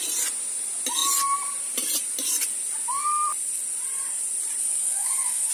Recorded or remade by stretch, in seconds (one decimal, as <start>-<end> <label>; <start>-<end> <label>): 0.0-4.8 recorded; 4.8-5.5 remade